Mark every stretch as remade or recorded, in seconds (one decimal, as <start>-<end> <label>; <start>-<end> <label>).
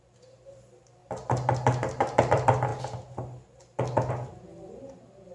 0.0-1.0 remade; 1.0-2.2 recorded; 2.2-2.7 remade; 2.7-4.1 recorded; 4.1-5.3 remade